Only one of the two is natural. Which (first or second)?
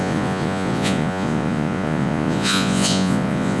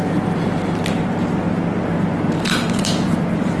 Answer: second